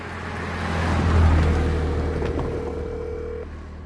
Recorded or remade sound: recorded